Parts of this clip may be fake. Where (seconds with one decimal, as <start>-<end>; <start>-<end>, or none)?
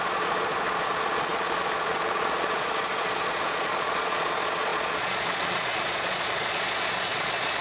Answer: 0.0-7.6